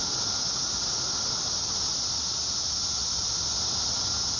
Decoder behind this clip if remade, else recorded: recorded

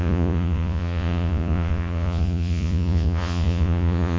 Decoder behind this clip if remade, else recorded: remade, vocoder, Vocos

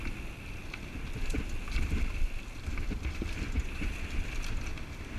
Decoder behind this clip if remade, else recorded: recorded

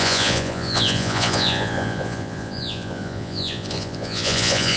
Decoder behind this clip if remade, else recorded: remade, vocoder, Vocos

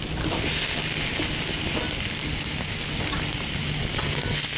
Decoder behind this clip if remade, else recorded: recorded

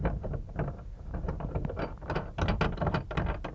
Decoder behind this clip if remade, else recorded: recorded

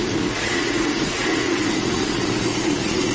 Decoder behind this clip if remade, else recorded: remade, vocoder, Vocos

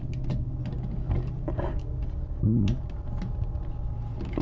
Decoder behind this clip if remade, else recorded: recorded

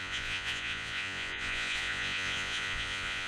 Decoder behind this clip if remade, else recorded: remade, vocoder, Vocos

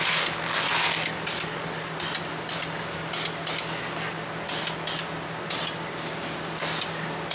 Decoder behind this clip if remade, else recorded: recorded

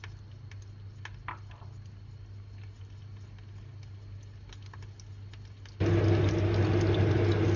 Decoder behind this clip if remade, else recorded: recorded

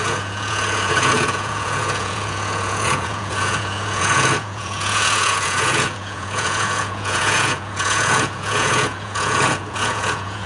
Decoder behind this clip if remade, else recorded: remade, vocoder, Vocos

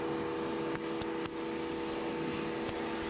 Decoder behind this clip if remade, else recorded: recorded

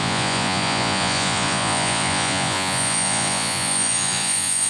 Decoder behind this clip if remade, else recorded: remade, vocoder, Vocos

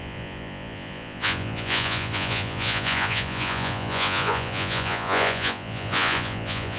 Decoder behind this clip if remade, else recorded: remade, vocoder, Vocos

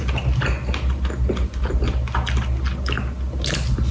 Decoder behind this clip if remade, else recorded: recorded